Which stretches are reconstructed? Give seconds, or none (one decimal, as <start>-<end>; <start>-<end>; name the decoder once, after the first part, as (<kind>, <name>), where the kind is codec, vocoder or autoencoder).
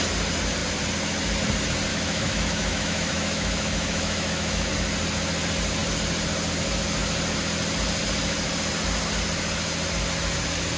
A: 1.9-4.7 (autoencoder, DAC-VAE)